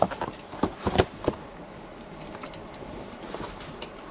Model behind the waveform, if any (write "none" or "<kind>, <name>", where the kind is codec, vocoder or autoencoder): none